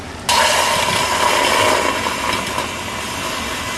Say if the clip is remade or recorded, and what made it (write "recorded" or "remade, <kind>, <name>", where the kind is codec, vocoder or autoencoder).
recorded